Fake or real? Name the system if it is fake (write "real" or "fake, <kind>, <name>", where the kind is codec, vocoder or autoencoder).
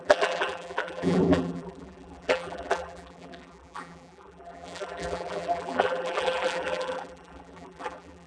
fake, vocoder, BigVGAN v2